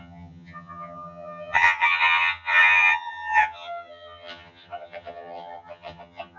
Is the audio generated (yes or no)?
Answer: yes